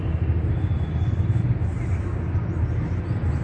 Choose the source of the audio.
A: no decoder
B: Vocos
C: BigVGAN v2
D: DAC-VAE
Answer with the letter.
A